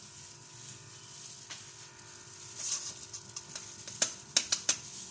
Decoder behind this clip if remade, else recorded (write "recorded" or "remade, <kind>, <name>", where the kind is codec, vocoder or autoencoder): recorded